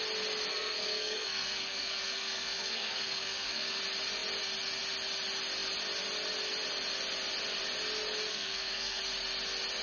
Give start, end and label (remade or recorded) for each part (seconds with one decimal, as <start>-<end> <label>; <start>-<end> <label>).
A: 0.0-0.5 recorded; 0.5-3.8 remade; 3.8-8.3 recorded; 8.3-9.0 remade; 9.0-9.8 recorded